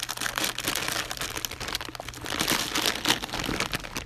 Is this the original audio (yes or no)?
yes